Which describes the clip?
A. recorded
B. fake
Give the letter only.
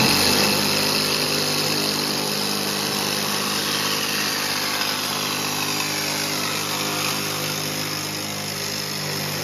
A